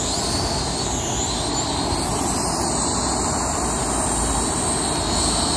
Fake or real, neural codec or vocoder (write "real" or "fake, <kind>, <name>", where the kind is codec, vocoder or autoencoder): real